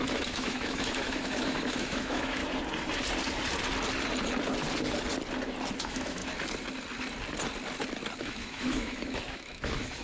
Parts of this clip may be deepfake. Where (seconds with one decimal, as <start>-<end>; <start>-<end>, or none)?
0.0-2.4; 5.8-6.2; 8.2-10.0